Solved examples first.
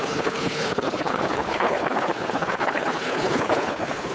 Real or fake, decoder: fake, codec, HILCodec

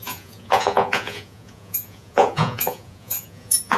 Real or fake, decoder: fake, vocoder, Vocos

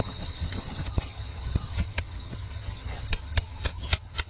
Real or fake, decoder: fake, vocoder, HiFi-GAN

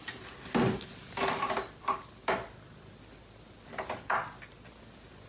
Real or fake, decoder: real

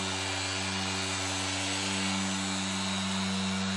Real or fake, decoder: real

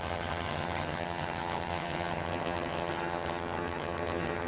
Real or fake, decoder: fake, vocoder, HiFi-GAN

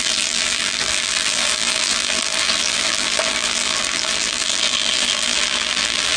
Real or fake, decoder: fake, vocoder, BigVGAN v2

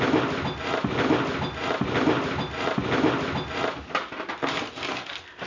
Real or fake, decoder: real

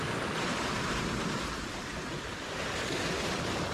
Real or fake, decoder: real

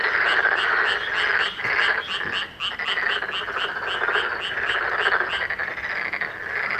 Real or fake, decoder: real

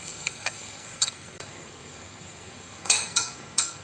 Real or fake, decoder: fake, codec, SNAC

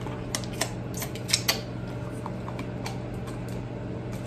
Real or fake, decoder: real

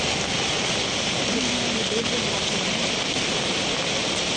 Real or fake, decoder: real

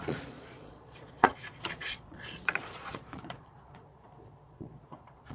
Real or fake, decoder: fake, vocoder, Vocos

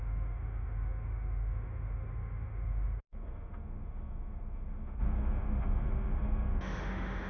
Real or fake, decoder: fake, autoencoder, DAC-VAE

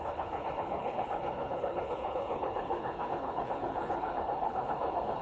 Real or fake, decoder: fake, codec, HILCodec